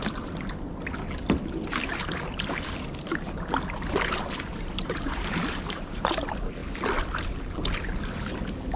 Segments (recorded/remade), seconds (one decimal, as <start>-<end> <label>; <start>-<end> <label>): 0.0-4.5 recorded; 4.5-6.1 remade; 6.1-8.8 recorded